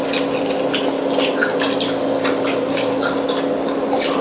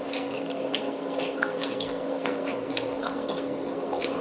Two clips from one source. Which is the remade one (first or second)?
second